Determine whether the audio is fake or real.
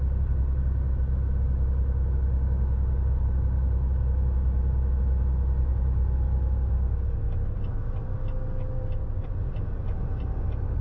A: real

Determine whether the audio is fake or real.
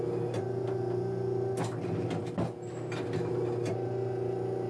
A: real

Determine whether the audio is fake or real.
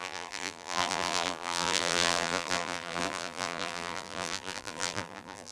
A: fake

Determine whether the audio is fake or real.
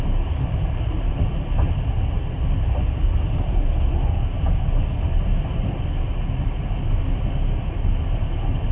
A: real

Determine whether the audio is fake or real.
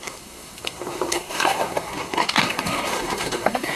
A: fake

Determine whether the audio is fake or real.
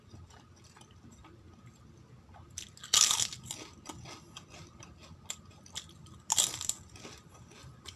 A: real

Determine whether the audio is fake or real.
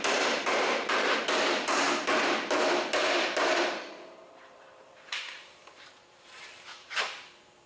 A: fake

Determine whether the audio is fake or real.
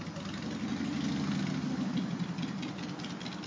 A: real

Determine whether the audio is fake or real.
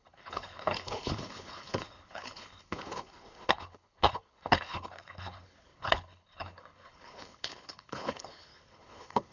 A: fake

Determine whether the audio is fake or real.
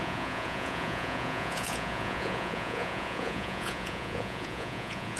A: fake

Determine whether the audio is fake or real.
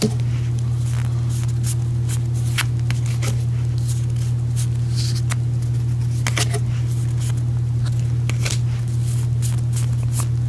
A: real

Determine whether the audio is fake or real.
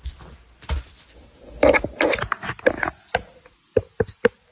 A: real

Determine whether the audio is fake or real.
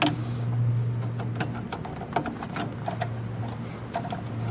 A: real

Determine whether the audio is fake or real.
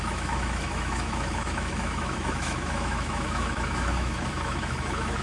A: fake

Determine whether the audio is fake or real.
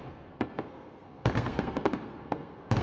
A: fake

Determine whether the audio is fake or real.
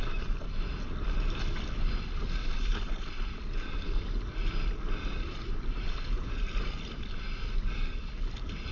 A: real